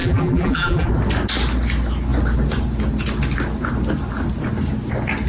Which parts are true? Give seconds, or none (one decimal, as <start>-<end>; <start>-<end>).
0.9-5.3